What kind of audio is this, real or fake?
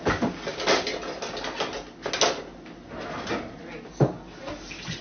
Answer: real